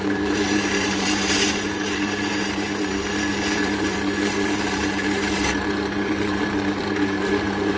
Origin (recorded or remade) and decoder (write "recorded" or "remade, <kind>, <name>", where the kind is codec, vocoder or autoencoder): remade, vocoder, BigVGAN v2